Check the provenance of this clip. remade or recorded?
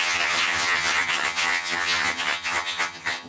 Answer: remade